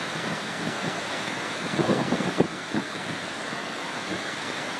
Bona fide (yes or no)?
no